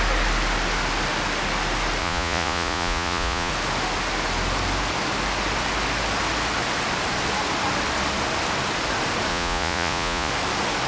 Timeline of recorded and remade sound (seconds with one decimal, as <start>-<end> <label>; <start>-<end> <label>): 0.0-2.0 recorded; 2.0-3.5 remade; 3.5-9.3 recorded; 9.3-10.3 remade; 10.3-10.9 recorded